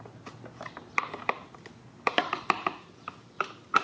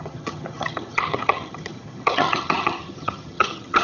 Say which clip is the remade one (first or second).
second